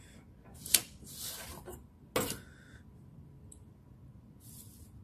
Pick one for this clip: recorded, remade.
recorded